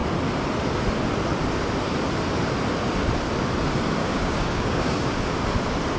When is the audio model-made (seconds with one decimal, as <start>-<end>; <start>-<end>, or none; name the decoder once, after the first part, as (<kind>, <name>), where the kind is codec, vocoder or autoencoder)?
4.0-5.2 (codec, DAC)